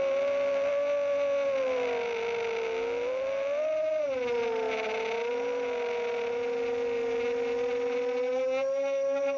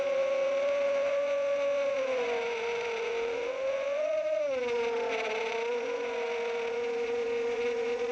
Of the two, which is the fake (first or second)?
second